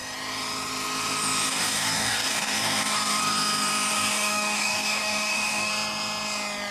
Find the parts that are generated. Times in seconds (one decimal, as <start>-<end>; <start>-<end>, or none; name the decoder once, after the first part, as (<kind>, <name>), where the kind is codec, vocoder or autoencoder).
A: 1.5-3.2 (codec, DAC); 3.9-5.7